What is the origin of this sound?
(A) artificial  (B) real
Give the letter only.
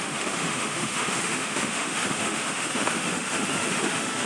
A